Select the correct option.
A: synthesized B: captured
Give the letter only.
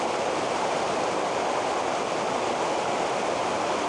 B